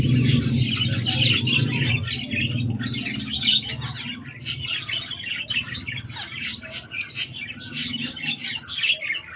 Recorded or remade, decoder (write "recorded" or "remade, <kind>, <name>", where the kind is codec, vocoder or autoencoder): recorded